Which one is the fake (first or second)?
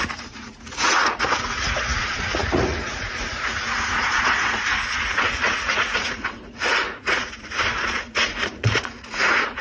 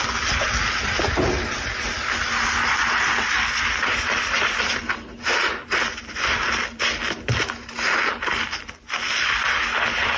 first